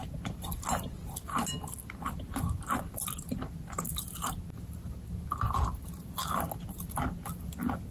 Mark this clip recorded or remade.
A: recorded